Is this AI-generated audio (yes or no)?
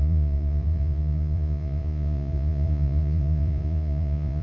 yes